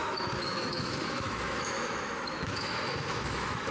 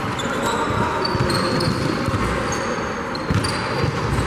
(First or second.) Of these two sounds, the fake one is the first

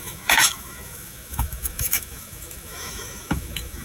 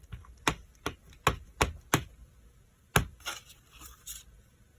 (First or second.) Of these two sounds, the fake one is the first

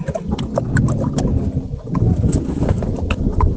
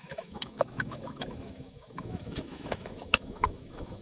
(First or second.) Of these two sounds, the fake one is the second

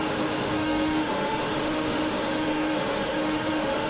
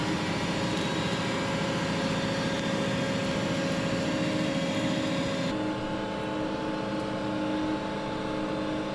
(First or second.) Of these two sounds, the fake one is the first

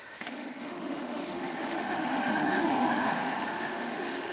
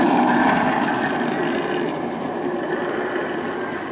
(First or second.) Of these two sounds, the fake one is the first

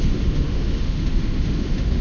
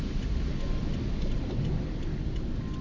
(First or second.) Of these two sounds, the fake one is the first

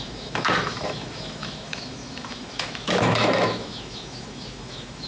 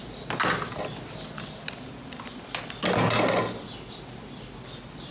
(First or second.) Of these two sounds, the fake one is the first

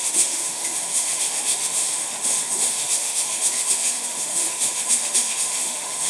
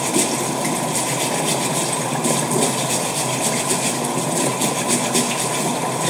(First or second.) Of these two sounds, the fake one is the first